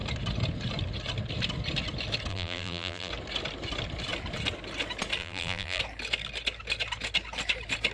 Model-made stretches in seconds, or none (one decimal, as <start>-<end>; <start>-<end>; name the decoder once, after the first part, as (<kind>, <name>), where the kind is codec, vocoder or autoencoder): 2.3-3.1 (vocoder, BigVGAN v2); 5.2-5.8